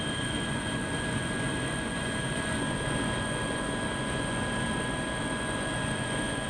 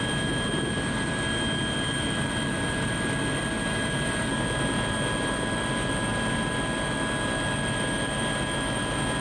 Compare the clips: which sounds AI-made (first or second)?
first